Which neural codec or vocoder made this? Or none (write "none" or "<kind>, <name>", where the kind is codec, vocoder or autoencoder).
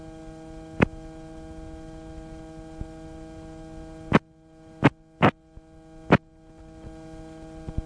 none